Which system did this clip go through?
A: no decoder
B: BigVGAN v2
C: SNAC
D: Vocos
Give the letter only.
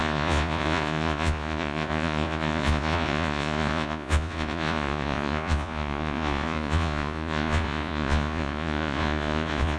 D